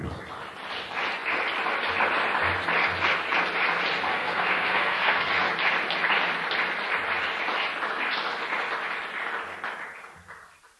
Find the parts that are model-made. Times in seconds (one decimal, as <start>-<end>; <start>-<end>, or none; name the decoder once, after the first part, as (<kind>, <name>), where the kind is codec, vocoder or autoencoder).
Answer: 4.1-5.3 (codec, SNAC)